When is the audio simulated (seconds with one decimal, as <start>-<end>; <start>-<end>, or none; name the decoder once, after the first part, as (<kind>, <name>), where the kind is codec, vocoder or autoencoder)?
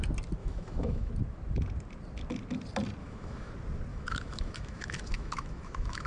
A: 0.4-1.1 (autoencoder, DAC-VAE); 3.0-3.5; 3.9-6.1